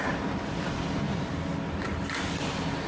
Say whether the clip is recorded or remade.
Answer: recorded